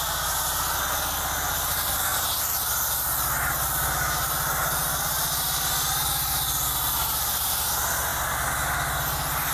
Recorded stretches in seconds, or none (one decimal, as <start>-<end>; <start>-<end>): 0.0-9.5